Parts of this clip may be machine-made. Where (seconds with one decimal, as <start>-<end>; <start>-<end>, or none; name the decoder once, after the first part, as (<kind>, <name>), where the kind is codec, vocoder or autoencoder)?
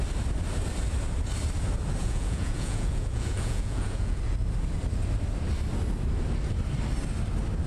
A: 2.0-4.2 (vocoder, Vocos)